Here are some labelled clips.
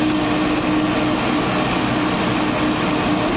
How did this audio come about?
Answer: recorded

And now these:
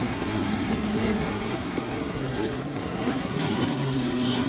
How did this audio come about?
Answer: remade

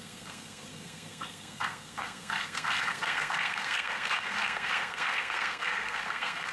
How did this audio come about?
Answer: remade